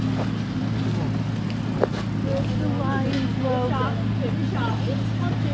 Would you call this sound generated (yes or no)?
no